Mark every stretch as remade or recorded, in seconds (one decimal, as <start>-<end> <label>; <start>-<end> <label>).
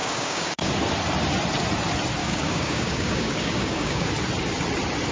0.0-0.7 remade; 0.7-2.2 recorded; 2.2-4.1 remade; 4.1-5.1 recorded